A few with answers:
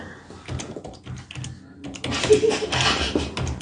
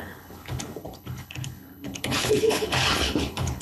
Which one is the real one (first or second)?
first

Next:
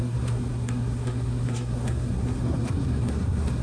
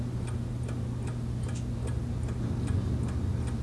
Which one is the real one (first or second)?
second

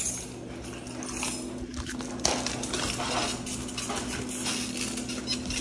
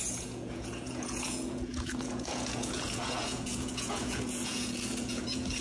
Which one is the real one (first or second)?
first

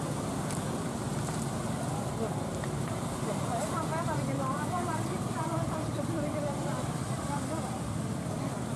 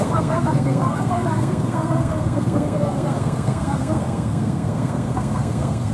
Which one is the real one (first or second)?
first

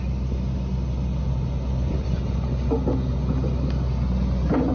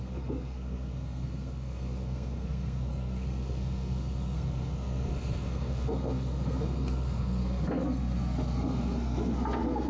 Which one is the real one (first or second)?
first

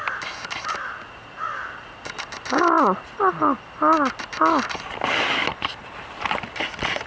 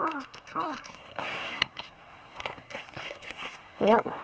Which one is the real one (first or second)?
first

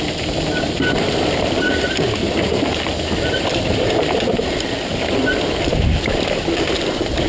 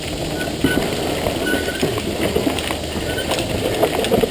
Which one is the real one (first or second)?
second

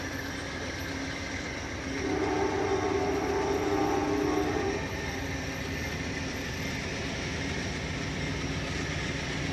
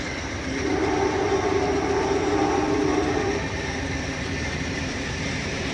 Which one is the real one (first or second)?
first